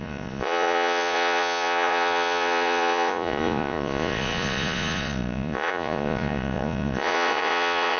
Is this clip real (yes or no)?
no